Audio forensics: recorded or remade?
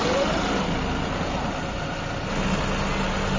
recorded